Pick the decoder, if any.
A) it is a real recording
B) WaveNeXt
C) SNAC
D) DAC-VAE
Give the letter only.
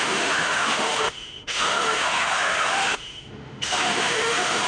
D